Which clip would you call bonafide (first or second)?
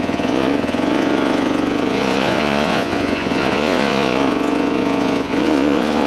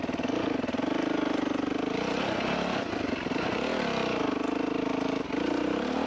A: second